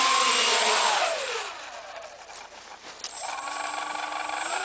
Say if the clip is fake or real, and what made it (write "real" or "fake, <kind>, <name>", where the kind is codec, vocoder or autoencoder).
real